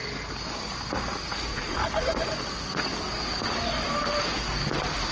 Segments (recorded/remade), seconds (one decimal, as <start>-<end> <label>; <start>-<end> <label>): 0.0-1.5 recorded; 1.5-2.3 remade; 2.3-5.1 recorded